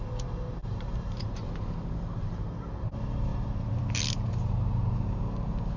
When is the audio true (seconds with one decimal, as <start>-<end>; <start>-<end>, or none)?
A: 0.0-0.6; 2.5-3.3; 3.8-5.8